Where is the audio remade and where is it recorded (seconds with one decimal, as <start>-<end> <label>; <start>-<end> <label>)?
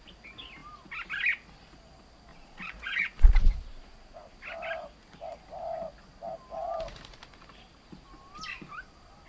0.0-2.3 recorded; 2.3-3.2 remade; 3.2-9.3 recorded